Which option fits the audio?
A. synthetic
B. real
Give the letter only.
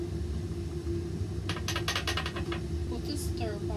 B